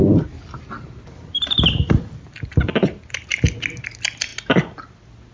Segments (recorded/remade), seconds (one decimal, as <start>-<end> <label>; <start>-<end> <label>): 0.0-5.3 recorded